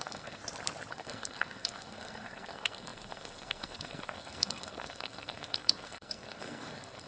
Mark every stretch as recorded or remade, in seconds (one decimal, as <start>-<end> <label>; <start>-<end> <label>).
0.0-0.4 remade; 0.4-0.9 recorded; 0.9-7.1 remade